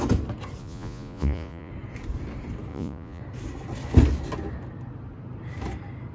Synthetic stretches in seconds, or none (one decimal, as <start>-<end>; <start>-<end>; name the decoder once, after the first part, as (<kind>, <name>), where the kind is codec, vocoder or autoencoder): 0.6-1.7 (vocoder, Vocos); 2.7-3.2